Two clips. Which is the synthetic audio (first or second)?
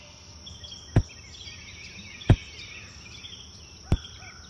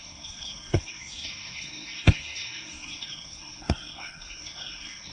second